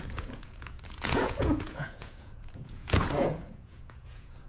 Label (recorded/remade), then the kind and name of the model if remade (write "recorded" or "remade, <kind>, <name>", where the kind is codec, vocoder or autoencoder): remade, vocoder, Vocos